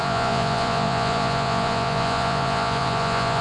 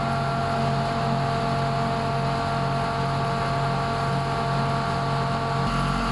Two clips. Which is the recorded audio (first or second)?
second